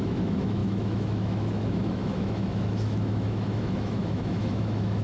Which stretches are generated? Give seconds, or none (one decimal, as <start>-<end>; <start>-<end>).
0.0-5.0